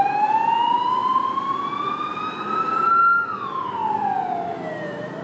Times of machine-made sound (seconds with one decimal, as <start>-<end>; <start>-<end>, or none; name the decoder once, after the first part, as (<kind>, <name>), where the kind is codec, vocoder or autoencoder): none